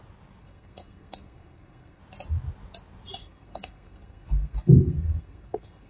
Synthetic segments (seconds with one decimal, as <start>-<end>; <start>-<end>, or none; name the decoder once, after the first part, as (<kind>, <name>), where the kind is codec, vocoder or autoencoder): 0.4-2.0 (codec, SNAC); 3.2-5.9